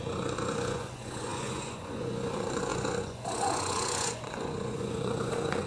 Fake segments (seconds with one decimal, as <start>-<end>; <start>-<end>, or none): 0.0-5.7